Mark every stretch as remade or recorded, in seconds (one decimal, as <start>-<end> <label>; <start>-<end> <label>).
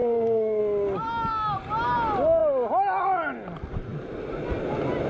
0.0-0.6 remade; 0.6-5.1 recorded